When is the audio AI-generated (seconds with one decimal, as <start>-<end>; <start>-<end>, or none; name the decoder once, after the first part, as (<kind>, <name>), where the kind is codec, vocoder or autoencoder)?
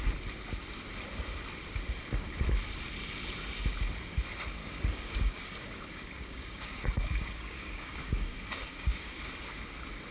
4.6-9.2 (codec, DAC)